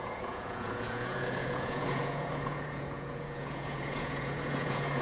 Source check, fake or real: fake